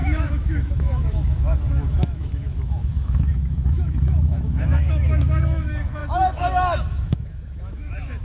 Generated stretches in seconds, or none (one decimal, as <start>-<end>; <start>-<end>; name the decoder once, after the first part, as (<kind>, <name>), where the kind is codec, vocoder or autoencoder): 0.0-8.2 (autoencoder, DAC-VAE)